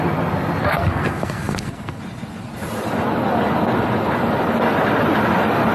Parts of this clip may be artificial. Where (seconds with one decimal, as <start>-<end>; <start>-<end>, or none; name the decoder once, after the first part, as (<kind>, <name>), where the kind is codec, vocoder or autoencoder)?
0.6-2.0 (codec, SNAC)